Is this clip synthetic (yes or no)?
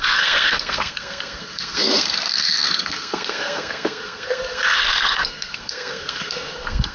yes